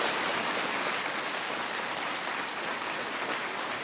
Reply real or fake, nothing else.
real